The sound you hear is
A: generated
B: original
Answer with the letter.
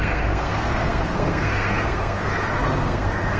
A